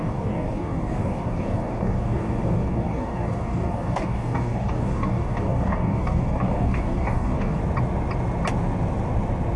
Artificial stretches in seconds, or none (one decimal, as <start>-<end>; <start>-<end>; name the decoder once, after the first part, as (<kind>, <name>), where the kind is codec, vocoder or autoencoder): 0.0-7.6 (codec, DAC)